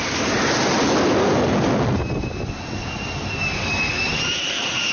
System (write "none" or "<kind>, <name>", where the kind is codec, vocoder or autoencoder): none